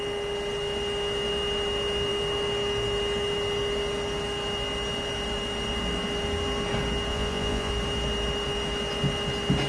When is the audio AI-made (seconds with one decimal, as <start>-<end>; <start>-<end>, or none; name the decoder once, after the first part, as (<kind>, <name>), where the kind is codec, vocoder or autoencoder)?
7.1-7.7 (vocoder, Vocos)